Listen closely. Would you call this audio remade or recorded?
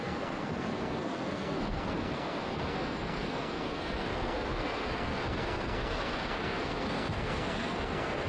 remade